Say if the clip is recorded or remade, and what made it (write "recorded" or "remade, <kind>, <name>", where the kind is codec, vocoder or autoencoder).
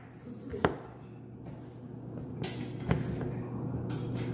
recorded